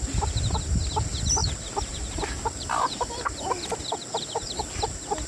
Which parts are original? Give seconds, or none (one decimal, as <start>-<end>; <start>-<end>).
0.0-1.4; 4.6-5.3